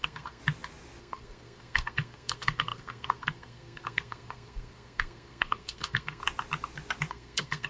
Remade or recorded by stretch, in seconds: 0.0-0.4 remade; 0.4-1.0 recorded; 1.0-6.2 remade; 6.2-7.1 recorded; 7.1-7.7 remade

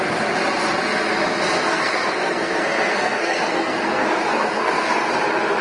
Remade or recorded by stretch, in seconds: 0.0-1.7 recorded; 1.7-5.1 remade; 5.1-5.6 recorded

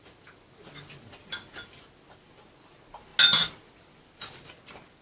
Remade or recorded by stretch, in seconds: 0.0-5.0 recorded

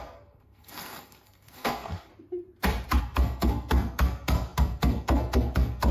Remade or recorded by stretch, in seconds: 0.0-2.1 remade; 2.1-3.0 recorded; 3.0-5.9 remade